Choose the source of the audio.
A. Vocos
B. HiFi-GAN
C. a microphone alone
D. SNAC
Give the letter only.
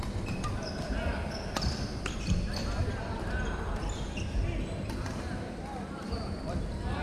C